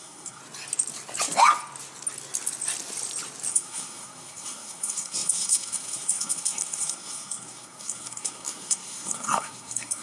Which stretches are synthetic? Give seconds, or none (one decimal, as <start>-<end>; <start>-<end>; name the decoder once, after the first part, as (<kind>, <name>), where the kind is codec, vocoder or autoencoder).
0.0-0.4 (codec, SNAC); 3.5-10.0